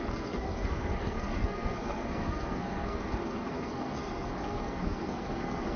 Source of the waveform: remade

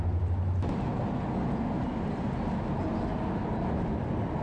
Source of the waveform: recorded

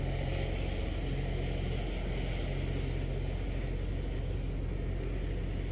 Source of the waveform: recorded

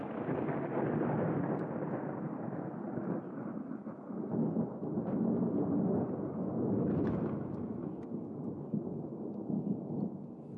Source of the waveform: recorded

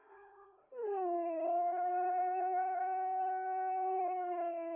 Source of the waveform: remade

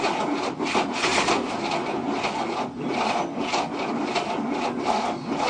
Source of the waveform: recorded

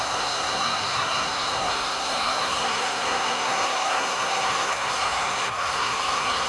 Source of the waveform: remade